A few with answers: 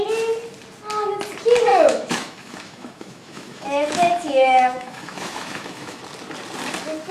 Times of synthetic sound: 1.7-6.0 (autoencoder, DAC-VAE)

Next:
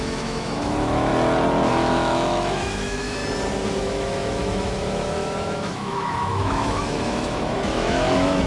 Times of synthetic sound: 0.0-1.1 (autoencoder, DAC-VAE); 1.7-3.2; 3.8-8.5

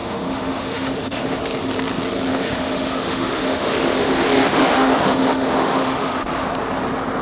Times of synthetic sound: 0.0-1.4 (autoencoder, DAC-VAE); 2.3-6.5

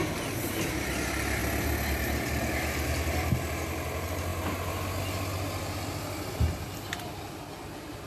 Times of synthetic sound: none